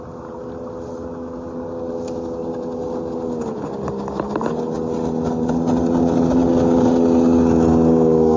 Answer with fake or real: real